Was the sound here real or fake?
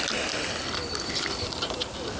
real